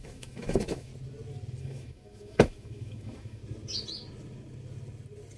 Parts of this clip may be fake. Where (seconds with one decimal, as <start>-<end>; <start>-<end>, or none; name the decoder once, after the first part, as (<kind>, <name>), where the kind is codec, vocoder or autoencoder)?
0.0-0.9 (autoencoder, DAC-VAE); 1.6-3.4